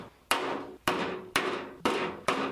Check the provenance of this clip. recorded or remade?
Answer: recorded